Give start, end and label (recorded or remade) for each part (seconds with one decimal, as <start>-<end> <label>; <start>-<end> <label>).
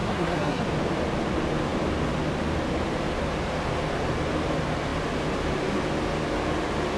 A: 0.0-0.6 remade; 0.6-7.0 recorded